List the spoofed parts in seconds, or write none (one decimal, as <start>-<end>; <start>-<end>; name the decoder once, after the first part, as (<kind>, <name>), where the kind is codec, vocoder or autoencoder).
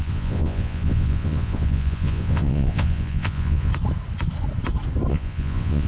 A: 0.0-3.7 (vocoder, Vocos); 5.1-5.9